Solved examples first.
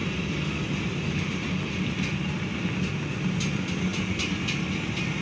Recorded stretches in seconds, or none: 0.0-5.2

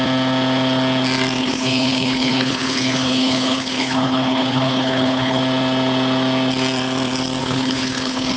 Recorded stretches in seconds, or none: 0.0-1.4; 5.4-7.4

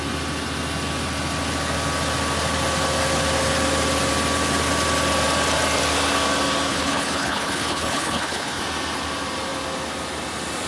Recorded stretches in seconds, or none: 0.0-6.7; 8.6-10.7

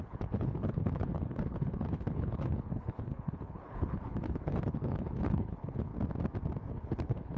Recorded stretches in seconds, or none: 5.9-6.7

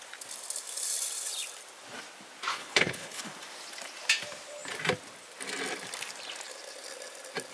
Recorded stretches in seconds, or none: 0.0-2.5; 3.2-7.5

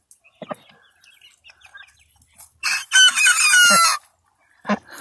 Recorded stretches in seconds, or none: 0.0-5.0

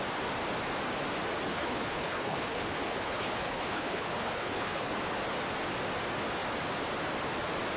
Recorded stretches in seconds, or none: 0.0-1.5; 4.9-7.8

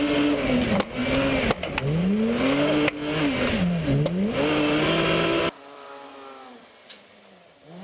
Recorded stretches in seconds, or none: 0.0-7.8